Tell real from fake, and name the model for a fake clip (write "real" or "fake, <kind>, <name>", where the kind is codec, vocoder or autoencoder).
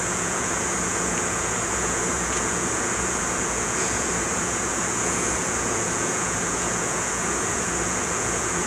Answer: fake, vocoder, Vocos